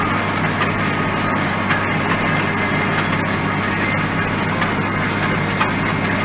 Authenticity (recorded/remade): recorded